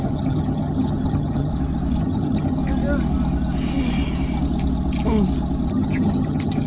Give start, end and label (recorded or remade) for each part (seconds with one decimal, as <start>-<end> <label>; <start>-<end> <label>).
0.0-1.5 remade; 1.5-2.0 recorded; 2.0-2.6 remade; 2.6-5.7 recorded; 5.7-6.7 remade